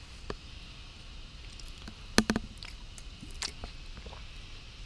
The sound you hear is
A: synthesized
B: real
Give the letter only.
B